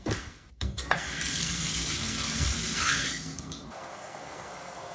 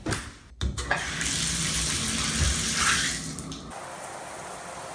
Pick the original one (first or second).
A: second